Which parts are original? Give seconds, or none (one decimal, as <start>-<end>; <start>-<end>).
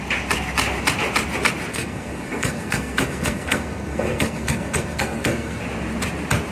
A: 0.0-1.7; 5.6-6.5